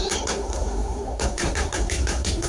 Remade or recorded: remade